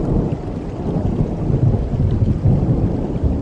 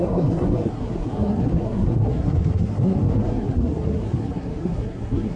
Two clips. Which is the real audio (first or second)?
first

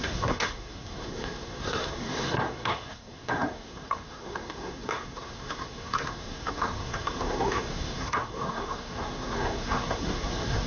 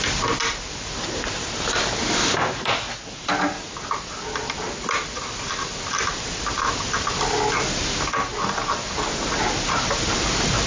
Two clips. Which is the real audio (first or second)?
second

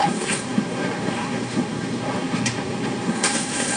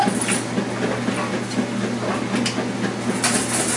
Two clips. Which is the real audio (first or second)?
second